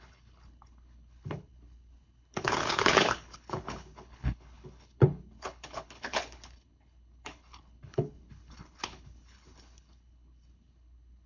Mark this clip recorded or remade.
remade